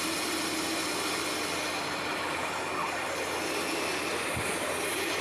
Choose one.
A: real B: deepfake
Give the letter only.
A